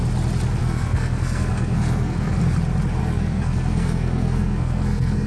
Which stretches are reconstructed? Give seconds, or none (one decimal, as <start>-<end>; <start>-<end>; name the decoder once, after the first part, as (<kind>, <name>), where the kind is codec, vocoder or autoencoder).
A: 0.6-2.4 (codec, SNAC); 3.0-5.3